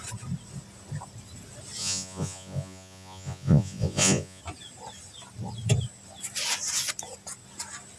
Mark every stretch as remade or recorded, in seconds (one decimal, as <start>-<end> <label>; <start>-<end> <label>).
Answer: 0.0-1.8 recorded; 1.8-4.4 remade; 4.4-8.0 recorded